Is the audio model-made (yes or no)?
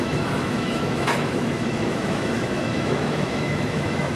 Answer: yes